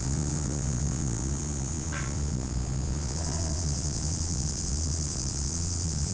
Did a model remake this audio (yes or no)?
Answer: yes